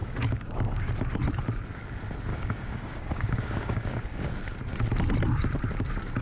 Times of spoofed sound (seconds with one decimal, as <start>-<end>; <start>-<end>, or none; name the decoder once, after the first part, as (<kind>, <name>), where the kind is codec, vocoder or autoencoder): 0.0-0.9 (codec, DAC); 2.3-4.3